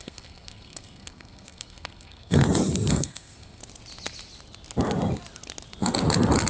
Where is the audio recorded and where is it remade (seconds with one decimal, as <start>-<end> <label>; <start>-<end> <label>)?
0.0-2.4 remade; 2.4-2.9 recorded; 2.9-3.6 remade; 3.6-6.5 recorded